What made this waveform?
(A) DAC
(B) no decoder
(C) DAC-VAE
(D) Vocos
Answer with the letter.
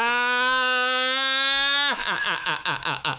C